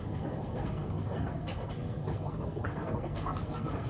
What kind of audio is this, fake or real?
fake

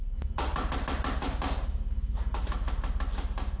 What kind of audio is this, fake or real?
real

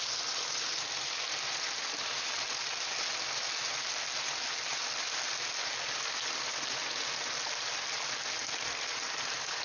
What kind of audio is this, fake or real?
real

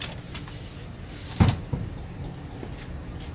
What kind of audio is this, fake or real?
real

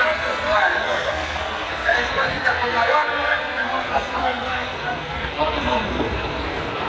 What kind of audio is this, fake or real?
fake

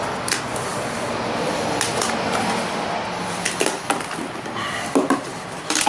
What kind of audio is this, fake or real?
real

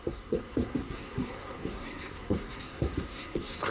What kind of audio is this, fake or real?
fake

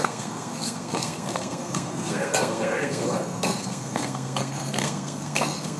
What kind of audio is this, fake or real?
fake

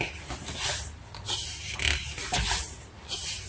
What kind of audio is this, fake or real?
real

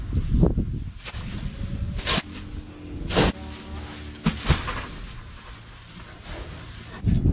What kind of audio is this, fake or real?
real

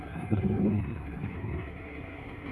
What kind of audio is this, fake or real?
fake